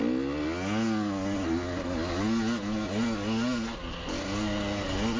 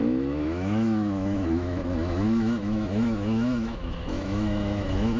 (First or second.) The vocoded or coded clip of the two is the second